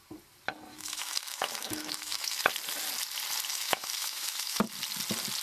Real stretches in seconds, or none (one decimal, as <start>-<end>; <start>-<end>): 0.0-0.7; 2.4-3.5; 4.6-5.4